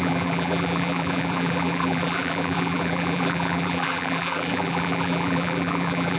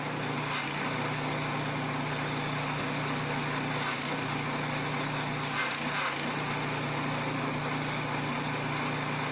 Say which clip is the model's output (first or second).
first